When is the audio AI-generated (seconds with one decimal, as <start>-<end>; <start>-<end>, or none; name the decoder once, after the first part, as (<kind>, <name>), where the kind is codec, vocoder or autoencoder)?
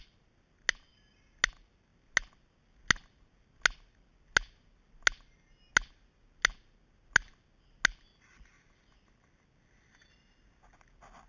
none